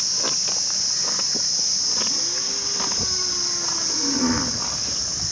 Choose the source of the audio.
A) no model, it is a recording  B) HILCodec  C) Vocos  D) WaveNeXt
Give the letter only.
A